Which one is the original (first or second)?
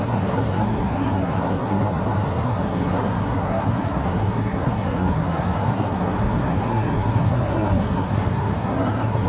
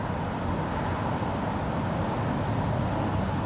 second